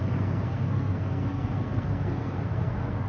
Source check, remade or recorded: remade